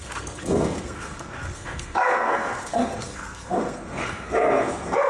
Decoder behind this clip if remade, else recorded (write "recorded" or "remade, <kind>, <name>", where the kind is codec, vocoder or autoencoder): remade, codec, SNAC